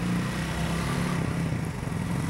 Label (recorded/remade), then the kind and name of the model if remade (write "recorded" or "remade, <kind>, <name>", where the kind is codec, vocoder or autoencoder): recorded